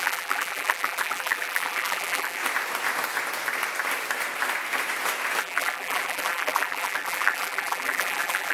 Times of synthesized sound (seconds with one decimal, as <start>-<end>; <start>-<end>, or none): 0.0-2.4; 5.4-8.5

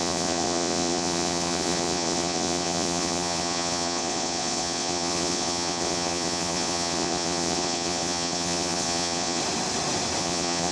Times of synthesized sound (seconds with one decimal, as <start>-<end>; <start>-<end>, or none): 0.0-9.4; 10.2-10.7

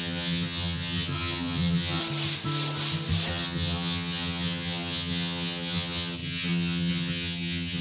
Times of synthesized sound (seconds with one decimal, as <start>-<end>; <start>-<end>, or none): 0.0-2.0; 3.3-7.8

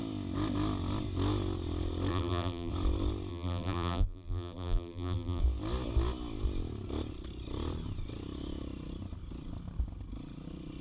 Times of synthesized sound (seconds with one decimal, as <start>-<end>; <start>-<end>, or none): 2.1-2.7; 3.3-5.4

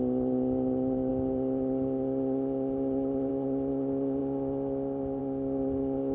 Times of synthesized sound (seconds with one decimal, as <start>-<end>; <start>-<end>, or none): none

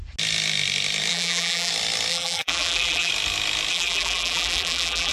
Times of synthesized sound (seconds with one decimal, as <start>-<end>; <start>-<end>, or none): 1.1-1.7; 2.1-3.1; 3.7-5.1